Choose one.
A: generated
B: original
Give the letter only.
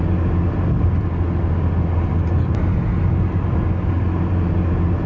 B